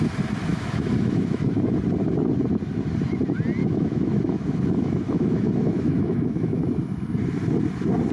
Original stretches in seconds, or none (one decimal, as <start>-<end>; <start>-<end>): 0.0-0.5; 1.5-3.6; 6.6-8.1

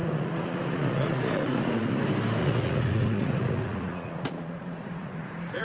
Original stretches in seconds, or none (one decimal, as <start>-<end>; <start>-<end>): 2.0-2.4

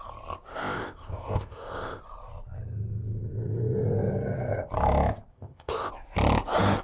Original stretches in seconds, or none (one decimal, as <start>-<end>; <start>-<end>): 0.0-0.5; 2.0-5.3; 5.9-6.8

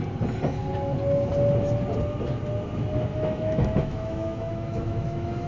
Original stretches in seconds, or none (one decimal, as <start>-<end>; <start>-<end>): 0.0-3.1

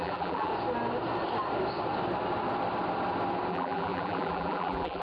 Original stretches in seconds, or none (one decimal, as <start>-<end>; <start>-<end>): 0.5-3.5

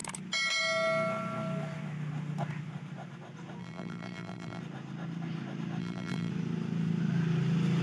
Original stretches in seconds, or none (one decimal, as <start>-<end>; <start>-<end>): 0.0-3.6; 4.6-5.8; 6.3-7.8

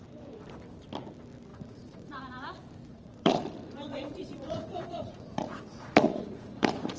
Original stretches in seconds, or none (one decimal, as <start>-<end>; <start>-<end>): 0.0-1.5; 2.2-2.9; 3.4-3.9

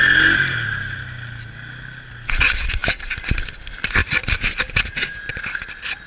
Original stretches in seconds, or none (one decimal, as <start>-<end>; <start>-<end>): 0.0-4.0; 4.5-5.3